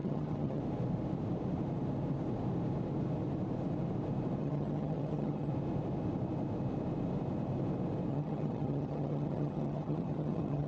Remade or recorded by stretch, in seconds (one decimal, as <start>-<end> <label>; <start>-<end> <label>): 0.0-0.6 remade; 0.6-4.4 recorded; 4.4-5.5 remade; 5.5-8.1 recorded; 8.1-10.7 remade